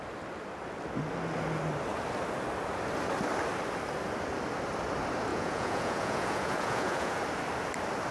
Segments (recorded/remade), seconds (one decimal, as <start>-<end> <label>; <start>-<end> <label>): 0.0-5.3 recorded; 5.3-7.2 remade; 7.2-8.1 recorded